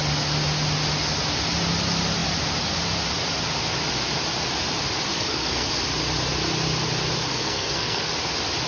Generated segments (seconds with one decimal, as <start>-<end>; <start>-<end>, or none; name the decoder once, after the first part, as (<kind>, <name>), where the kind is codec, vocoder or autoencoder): 5.1-5.7 (codec, SNAC); 7.3-8.1

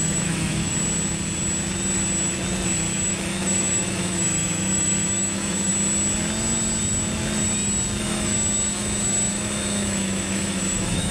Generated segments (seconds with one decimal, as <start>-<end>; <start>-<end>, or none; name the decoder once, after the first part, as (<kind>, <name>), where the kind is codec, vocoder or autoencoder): 0.0-0.7 (autoencoder, DAC-VAE); 2.9-5.7; 8.0-11.1

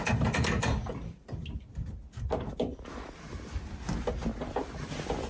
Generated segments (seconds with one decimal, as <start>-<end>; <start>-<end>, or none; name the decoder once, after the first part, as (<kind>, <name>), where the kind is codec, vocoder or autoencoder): 0.0-1.4 (vocoder, BigVGAN v2); 4.5-5.3

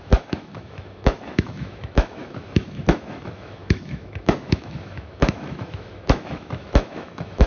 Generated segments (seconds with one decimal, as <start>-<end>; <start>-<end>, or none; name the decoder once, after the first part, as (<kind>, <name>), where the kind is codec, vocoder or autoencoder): 0.0-7.5 (autoencoder, DAC-VAE)

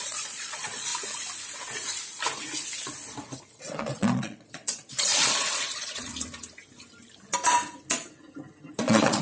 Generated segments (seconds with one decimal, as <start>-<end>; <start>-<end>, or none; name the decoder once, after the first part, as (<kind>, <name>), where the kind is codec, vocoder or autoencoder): 0.0-0.9 (vocoder, Vocos); 3.5-5.1; 5.6-6.1; 8.7-9.2